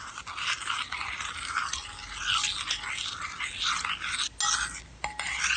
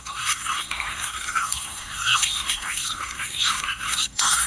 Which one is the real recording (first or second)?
first